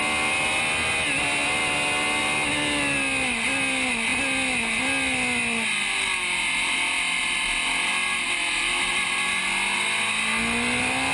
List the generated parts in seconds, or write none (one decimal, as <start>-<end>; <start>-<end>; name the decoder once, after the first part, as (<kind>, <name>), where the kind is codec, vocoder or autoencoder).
none